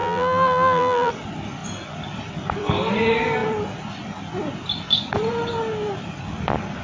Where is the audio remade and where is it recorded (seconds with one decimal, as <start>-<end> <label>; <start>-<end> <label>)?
0.0-1.1 remade; 1.1-6.8 recorded